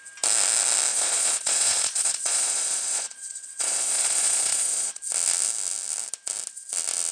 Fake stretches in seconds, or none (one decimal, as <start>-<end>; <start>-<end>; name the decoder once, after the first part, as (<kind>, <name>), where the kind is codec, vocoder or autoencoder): 0.9-5.0 (vocoder, Vocos)